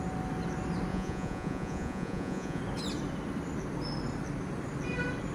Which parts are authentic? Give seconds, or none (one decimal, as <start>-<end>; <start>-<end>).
0.0-0.9; 2.6-5.3